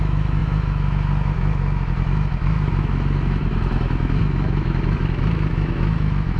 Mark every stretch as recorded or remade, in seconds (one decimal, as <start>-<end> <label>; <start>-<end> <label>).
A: 0.0-6.4 remade